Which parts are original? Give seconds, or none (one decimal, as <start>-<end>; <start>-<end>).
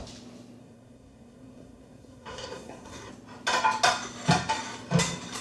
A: 0.0-0.6; 3.1-5.4